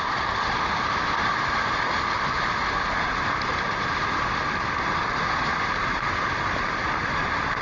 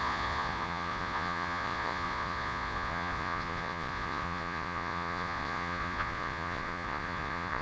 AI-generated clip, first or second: second